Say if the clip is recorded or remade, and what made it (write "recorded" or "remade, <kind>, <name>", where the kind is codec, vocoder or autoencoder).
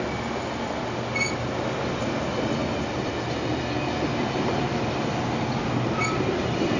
recorded